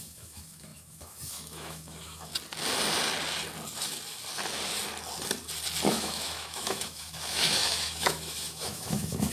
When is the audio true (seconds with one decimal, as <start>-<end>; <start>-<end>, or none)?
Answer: 2.3-5.9

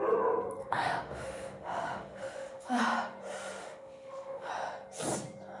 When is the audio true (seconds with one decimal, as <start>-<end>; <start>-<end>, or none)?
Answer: 0.0-0.6; 2.8-3.6; 4.5-5.6

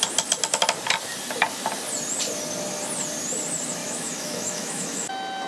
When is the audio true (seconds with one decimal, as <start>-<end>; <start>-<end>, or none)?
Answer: 0.0-3.8; 5.1-5.5

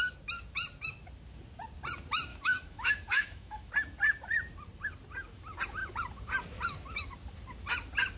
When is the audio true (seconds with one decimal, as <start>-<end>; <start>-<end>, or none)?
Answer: 0.0-2.3; 3.7-8.2

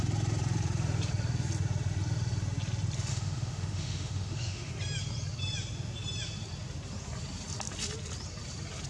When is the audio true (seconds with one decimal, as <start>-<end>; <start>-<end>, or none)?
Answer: 0.0-3.1; 4.7-8.9

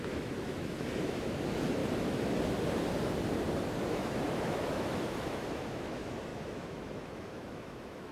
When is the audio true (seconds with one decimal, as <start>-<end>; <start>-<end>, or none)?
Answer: 1.8-3.9

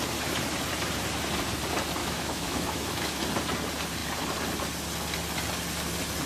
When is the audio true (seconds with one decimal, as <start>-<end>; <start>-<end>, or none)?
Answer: 0.0-2.0; 3.2-6.3

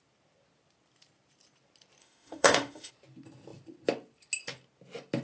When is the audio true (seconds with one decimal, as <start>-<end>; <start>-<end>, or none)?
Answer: 0.0-2.0; 2.9-5.2